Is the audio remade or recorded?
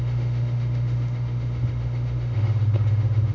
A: remade